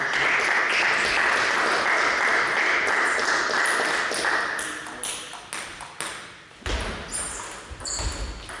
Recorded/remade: recorded